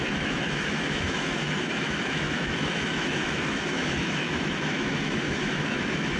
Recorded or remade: remade